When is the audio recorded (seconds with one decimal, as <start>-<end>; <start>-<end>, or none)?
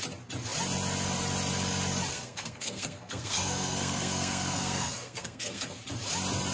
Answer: 0.0-2.1; 5.8-6.5